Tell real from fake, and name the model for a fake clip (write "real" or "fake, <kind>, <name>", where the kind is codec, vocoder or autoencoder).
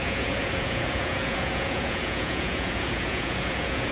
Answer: fake, vocoder, Vocos